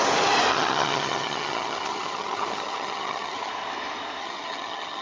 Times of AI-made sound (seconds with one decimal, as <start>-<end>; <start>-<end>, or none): 0.5-3.5; 4.2-5.0